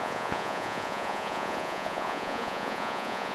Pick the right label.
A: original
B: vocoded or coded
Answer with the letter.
B